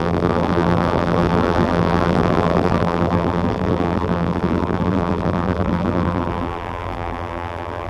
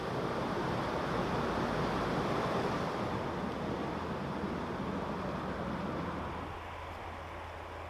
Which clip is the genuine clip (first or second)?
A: second